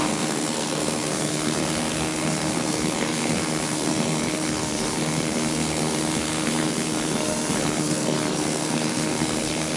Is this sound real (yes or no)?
no